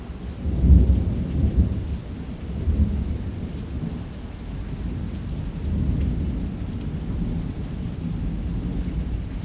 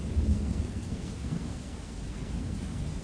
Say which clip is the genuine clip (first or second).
first